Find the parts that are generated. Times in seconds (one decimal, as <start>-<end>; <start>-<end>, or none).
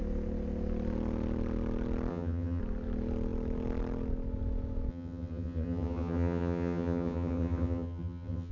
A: 2.1-2.6; 4.9-8.5